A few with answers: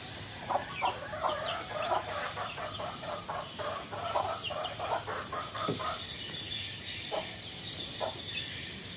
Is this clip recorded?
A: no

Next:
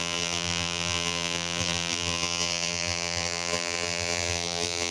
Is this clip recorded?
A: no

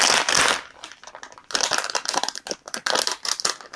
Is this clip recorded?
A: yes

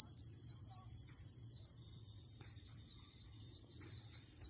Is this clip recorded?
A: no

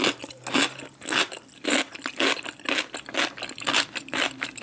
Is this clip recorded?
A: yes